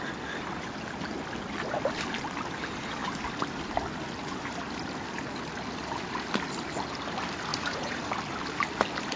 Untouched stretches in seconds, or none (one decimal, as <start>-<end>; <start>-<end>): 0.0-7.5; 8.0-9.2